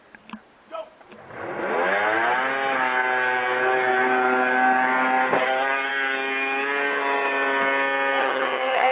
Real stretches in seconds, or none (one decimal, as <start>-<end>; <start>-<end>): 0.0-8.2